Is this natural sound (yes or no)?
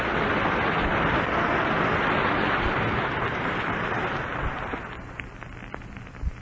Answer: yes